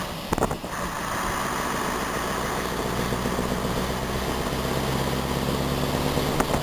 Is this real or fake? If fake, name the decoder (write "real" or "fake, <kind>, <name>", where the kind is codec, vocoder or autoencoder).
real